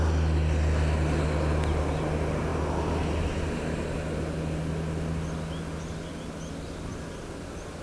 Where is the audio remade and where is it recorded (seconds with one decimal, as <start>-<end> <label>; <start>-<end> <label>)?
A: 0.0-7.8 recorded